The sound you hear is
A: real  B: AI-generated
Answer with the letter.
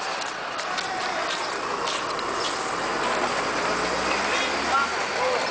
A